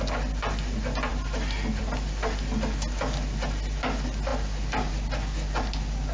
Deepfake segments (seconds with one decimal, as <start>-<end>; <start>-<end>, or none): none